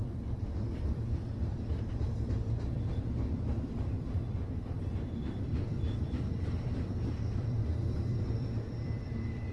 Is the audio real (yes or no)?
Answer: no